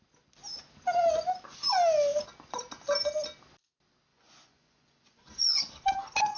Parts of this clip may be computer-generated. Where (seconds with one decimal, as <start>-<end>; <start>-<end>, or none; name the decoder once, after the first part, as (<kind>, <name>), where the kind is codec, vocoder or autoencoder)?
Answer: 4.1-5.6 (vocoder, Vocos)